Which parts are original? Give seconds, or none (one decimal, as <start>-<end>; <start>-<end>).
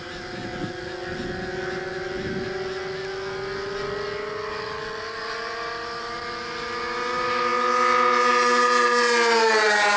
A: 0.4-5.0; 7.5-9.4